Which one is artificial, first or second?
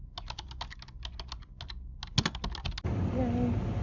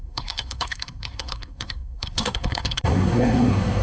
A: second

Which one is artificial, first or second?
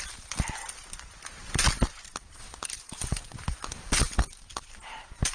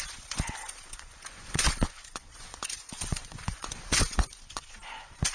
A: second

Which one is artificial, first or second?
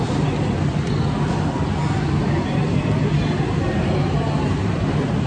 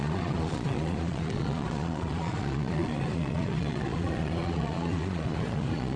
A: second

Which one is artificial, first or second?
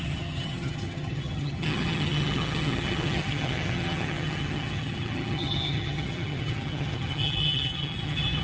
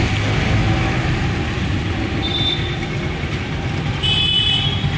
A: first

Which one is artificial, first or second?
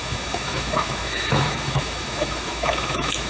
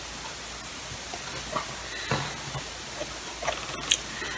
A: first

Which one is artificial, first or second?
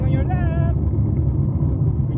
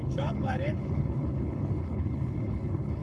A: second